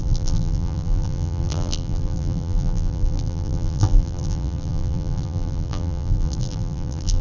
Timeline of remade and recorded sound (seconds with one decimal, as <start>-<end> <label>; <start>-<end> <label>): 0.0-7.2 remade